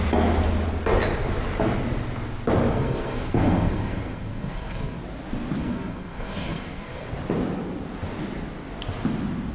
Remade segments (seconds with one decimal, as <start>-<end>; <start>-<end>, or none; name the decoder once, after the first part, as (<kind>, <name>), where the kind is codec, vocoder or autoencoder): 2.7-5.0 (codec, SNAC); 5.6-7.1